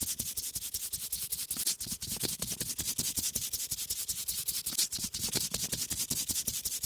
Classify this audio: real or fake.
real